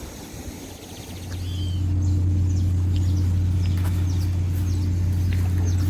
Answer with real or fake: real